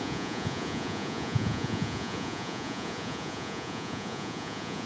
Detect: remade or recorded remade